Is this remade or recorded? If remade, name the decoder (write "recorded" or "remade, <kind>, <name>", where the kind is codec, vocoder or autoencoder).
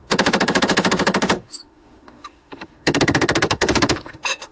remade, autoencoder, DAC-VAE